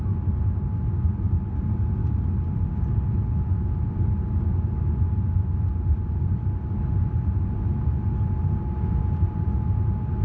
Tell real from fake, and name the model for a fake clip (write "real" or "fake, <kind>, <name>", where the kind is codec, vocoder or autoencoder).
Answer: real